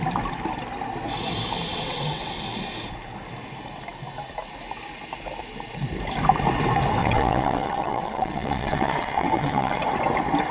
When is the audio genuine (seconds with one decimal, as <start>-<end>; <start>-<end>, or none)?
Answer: 0.0-1.7; 2.3-7.0; 9.8-10.5